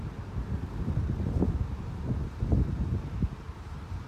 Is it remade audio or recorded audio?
remade